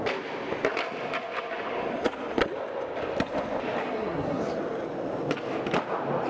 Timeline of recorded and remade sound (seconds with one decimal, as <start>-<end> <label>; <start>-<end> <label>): 0.0-3.8 recorded; 3.8-4.4 remade; 4.4-6.3 recorded